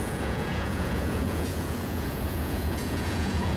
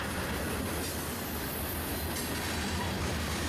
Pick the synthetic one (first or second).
first